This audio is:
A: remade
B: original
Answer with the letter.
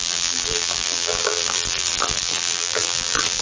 A